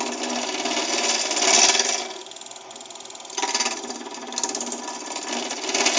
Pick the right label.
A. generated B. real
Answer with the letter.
B